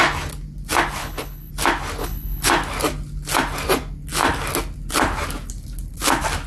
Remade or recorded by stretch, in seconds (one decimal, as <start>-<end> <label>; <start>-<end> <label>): 0.0-1.0 recorded; 1.0-1.5 remade; 1.5-2.0 recorded; 2.0-2.5 remade; 2.5-6.5 recorded